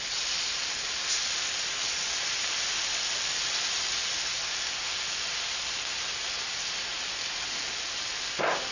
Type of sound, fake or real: real